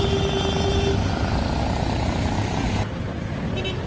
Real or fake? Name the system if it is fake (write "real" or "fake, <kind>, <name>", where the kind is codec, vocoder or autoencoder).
real